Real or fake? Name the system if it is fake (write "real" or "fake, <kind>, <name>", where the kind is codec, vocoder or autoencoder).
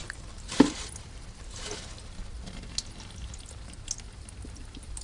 real